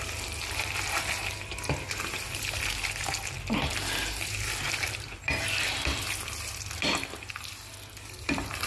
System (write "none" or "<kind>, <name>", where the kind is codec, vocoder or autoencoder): none